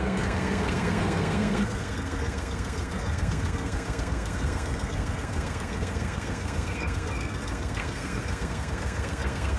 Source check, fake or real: fake